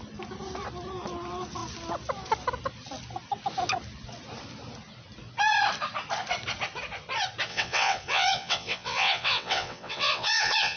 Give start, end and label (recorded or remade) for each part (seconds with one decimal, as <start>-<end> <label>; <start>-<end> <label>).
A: 0.0-7.5 recorded; 7.5-10.8 remade